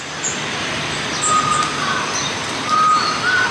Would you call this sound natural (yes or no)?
yes